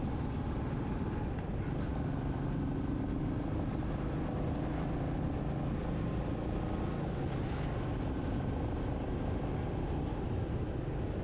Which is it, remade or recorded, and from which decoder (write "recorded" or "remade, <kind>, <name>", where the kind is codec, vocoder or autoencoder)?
recorded